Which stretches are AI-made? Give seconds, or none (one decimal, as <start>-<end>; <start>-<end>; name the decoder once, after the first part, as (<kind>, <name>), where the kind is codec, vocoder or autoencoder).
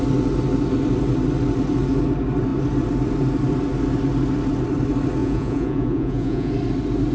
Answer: 5.2-6.5 (vocoder, Vocos)